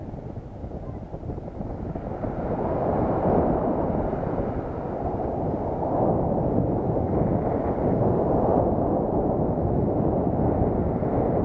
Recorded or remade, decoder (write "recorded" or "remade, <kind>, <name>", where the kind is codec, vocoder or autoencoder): recorded